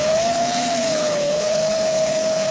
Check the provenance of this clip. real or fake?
fake